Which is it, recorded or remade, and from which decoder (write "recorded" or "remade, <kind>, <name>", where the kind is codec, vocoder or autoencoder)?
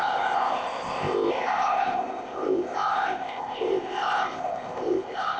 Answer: remade, codec, ZipCodec